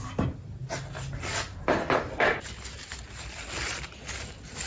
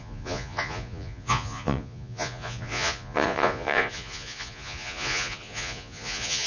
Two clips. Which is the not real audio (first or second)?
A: second